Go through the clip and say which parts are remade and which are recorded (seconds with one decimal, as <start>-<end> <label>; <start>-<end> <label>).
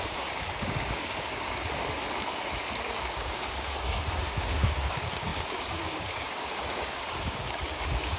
0.0-1.6 remade; 1.6-3.0 recorded; 3.0-8.2 remade